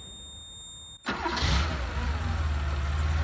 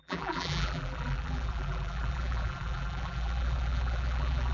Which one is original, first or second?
first